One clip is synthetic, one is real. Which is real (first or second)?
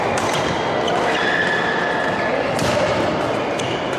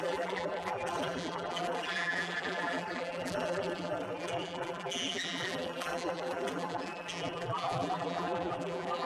first